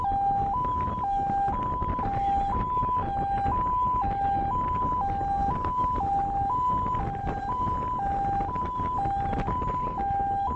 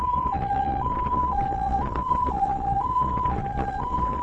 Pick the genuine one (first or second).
first